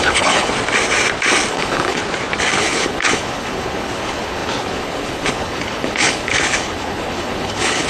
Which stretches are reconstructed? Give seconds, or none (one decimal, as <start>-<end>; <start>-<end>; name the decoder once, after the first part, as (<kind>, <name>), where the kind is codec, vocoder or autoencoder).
0.0-0.5 (codec, HILCodec); 1.5-2.0; 2.6-7.9